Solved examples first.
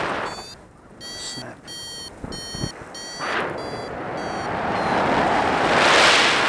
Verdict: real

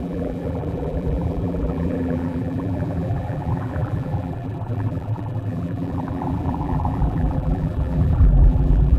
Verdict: fake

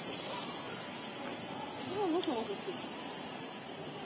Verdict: real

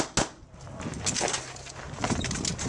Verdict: real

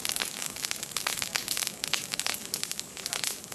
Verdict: fake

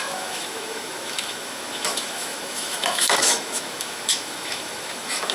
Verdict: fake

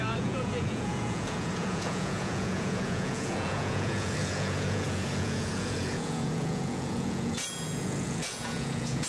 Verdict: fake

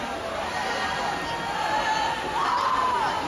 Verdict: real